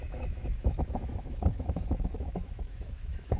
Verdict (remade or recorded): remade